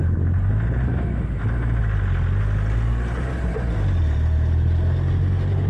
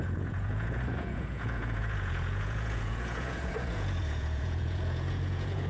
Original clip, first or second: first